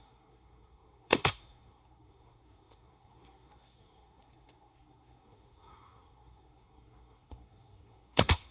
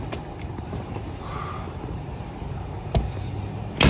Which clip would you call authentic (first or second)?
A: second